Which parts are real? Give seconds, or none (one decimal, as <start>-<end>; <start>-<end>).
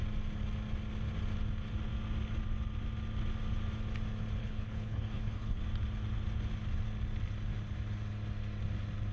0.0-4.4; 5.6-9.1